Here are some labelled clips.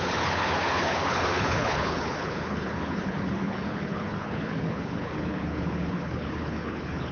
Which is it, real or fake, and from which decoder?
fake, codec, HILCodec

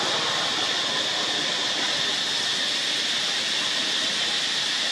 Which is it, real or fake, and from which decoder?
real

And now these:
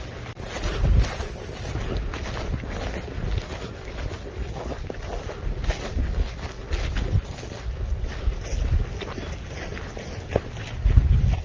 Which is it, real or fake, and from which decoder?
real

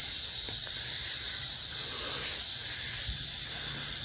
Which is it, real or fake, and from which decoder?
real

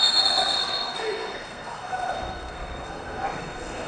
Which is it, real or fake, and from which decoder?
fake, codec, SNAC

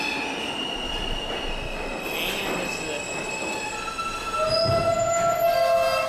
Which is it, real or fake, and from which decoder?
real